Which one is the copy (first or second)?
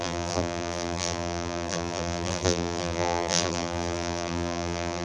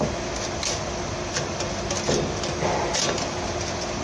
first